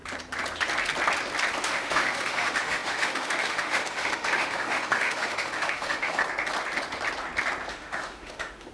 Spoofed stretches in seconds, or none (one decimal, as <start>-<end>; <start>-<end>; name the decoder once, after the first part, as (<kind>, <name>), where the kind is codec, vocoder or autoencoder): 1.6-6.2 (autoencoder, DAC-VAE); 7.7-8.7

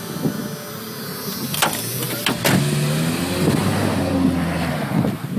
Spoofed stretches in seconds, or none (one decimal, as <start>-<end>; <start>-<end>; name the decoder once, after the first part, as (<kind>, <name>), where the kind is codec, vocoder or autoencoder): none

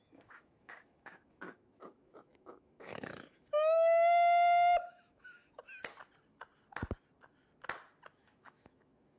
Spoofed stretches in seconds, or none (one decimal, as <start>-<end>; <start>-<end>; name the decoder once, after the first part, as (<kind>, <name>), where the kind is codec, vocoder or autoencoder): 0.0-5.6 (autoencoder, DAC-VAE); 8.1-9.2

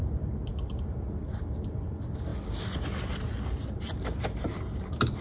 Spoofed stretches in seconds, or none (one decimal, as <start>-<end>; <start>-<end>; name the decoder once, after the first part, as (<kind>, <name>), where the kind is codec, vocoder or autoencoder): none

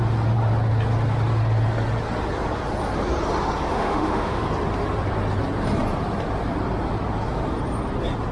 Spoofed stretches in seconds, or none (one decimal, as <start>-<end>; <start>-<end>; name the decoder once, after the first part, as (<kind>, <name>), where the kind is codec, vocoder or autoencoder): 3.7-4.4 (autoencoder, DAC-VAE)

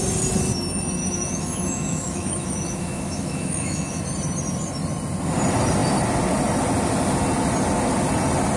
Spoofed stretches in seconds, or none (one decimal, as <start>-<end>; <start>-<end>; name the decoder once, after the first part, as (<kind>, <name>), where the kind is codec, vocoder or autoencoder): 1.0-4.0 (autoencoder, DAC-VAE)

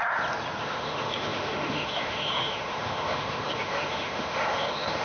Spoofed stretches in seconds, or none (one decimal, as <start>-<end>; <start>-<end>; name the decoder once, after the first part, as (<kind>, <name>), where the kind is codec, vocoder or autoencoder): 0.6-5.0 (autoencoder, DAC-VAE)